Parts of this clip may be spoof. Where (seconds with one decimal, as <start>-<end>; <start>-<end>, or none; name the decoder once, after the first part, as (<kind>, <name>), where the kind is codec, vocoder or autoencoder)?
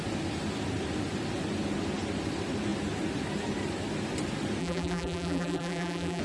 4.6-6.2 (vocoder, BigVGAN v2)